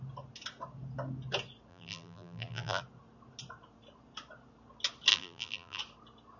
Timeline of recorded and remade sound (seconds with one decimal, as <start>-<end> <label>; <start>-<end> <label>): 0.0-1.7 recorded; 1.7-2.8 remade; 2.8-5.1 recorded; 5.1-5.8 remade; 5.8-6.4 recorded